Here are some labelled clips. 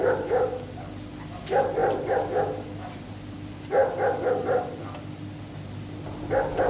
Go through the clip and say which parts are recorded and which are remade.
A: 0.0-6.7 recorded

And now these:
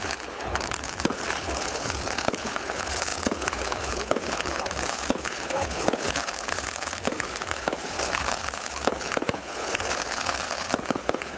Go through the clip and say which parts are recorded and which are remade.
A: 0.0-11.4 remade

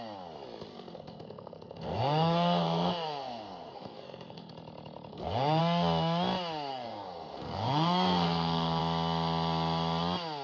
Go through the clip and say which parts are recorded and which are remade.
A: 0.0-0.7 recorded; 0.7-4.5 remade; 4.5-5.1 recorded; 5.1-5.6 remade; 5.6-6.7 recorded; 6.7-8.8 remade; 8.8-10.4 recorded

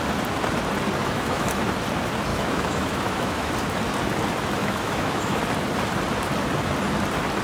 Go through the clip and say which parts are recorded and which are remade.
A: 0.0-1.0 recorded; 1.0-1.6 remade; 1.6-2.3 recorded; 2.3-3.5 remade; 3.5-4.6 recorded; 4.6-5.4 remade; 5.4-7.4 recorded

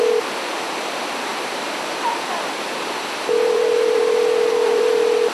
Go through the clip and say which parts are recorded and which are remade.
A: 0.0-5.3 remade